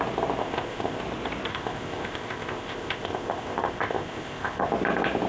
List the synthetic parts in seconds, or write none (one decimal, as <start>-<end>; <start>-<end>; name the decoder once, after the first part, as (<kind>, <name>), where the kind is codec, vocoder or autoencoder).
0.4-1.0 (codec, ZipCodec); 1.5-4.7